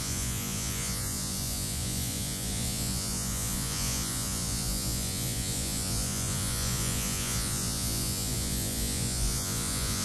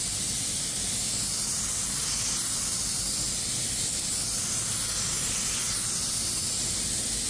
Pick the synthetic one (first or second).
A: first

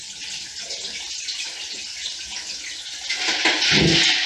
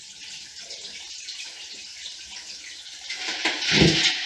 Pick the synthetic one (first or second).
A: second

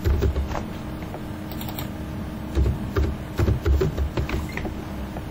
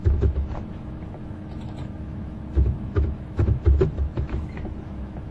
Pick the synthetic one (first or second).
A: second